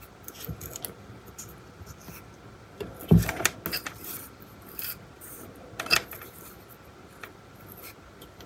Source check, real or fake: real